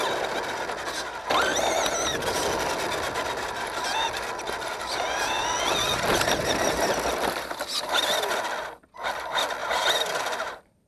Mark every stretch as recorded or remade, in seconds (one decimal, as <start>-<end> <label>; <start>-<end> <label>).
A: 0.0-1.5 recorded; 1.5-2.0 remade; 2.0-9.6 recorded; 9.6-10.9 remade